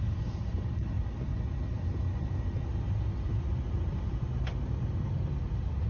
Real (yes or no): yes